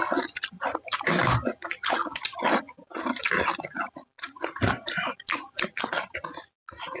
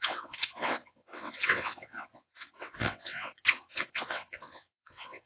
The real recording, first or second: first